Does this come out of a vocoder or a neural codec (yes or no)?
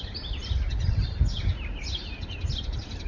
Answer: no